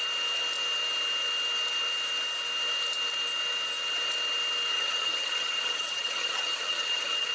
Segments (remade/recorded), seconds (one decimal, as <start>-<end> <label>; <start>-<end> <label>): 0.0-4.7 recorded; 4.7-7.3 remade